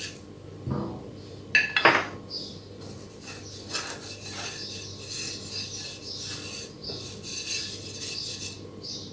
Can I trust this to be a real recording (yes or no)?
yes